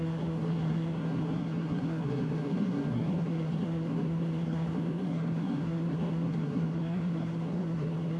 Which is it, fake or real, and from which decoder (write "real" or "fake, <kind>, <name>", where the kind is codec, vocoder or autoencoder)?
fake, codec, SNAC